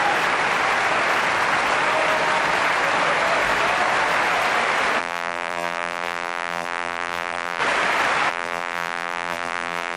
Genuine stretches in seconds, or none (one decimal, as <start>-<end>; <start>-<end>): 0.0-5.0; 7.6-8.3